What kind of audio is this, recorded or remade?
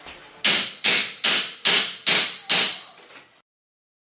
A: recorded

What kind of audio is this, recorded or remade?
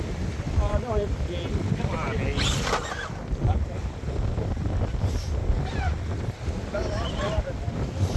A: recorded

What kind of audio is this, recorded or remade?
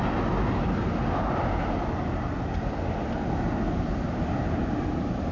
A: recorded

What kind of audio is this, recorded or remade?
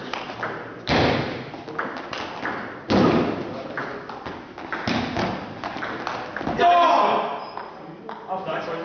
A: recorded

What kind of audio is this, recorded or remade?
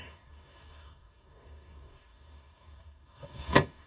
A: remade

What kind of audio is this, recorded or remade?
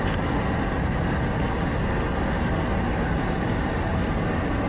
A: recorded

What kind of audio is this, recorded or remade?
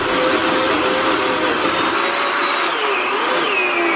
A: recorded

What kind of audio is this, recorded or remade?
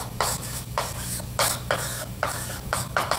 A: remade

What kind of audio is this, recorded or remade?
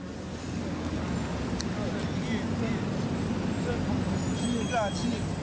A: recorded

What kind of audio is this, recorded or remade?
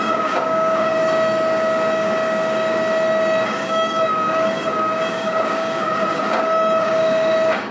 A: remade